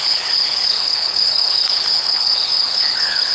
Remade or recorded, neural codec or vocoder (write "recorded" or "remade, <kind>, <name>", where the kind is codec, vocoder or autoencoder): remade, codec, HILCodec